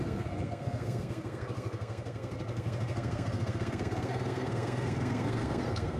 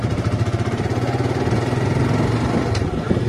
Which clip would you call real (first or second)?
second